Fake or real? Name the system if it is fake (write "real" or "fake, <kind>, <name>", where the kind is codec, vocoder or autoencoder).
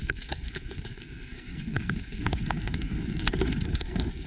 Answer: fake, codec, SNAC